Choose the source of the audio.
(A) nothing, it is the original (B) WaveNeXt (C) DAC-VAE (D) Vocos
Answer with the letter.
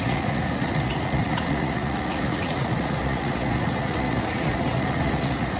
D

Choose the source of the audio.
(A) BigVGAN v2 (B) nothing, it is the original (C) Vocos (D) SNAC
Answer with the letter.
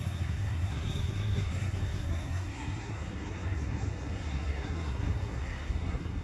D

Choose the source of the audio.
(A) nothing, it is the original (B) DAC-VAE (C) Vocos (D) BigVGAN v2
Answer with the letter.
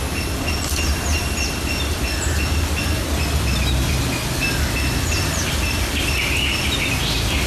A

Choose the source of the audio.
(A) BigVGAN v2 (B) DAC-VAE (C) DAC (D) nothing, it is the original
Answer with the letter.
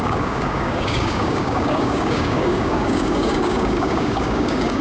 C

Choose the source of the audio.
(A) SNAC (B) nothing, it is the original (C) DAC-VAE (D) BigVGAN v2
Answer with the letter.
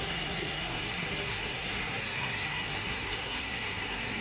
A